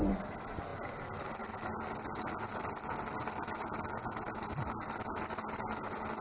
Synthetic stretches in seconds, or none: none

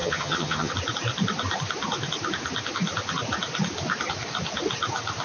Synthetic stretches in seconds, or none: 0.0-0.7 (vocoder, HiFi-GAN)